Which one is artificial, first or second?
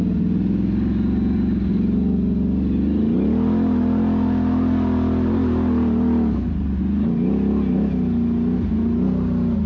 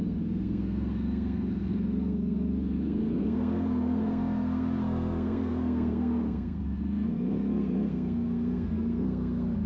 second